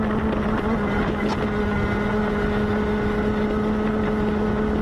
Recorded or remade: recorded